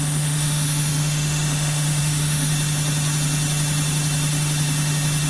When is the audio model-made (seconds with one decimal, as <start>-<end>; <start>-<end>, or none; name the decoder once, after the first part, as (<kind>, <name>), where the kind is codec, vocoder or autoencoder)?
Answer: 0.0-2.5 (autoencoder, DAC-VAE)